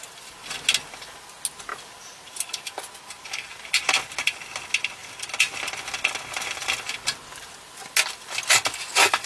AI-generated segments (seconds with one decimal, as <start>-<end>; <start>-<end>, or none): none